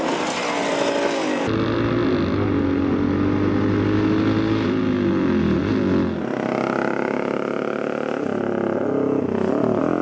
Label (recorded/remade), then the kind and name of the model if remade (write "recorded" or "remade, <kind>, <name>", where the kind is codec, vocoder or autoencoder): recorded